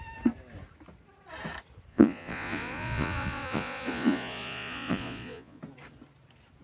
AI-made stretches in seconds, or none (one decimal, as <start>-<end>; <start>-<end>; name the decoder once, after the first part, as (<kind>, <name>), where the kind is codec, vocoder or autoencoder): 1.9-5.6 (vocoder, Vocos)